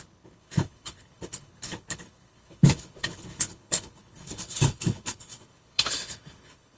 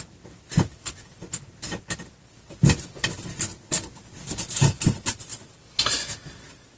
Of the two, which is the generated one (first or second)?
first